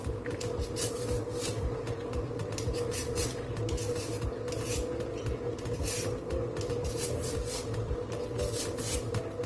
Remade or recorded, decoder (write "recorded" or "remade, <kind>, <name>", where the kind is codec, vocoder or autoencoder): recorded